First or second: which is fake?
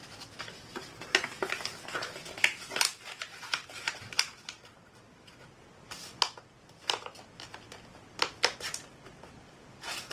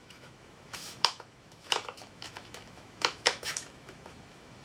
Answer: second